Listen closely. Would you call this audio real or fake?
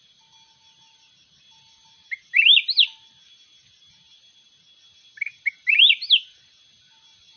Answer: real